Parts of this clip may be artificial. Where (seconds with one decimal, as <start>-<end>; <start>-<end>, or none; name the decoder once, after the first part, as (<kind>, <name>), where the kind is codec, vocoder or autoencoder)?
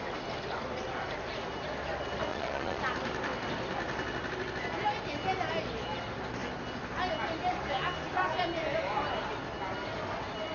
2.3-2.8 (vocoder, Vocos)